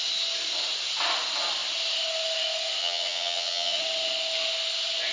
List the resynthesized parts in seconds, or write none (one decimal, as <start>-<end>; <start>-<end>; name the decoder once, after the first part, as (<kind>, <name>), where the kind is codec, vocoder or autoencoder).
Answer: 2.8-3.8 (vocoder, HiFi-GAN)